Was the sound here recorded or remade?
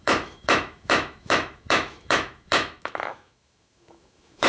remade